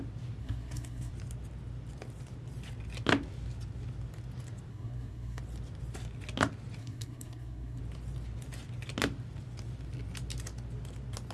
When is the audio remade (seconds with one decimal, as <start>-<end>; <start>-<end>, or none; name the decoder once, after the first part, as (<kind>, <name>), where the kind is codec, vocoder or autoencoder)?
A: 0.4-1.1 (codec, SNAC); 4.7-5.4; 6.8-7.8